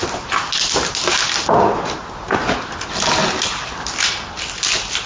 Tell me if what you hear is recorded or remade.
recorded